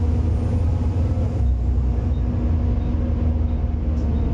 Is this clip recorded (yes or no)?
yes